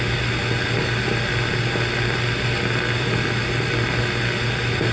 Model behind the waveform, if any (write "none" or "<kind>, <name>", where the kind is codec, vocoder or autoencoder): none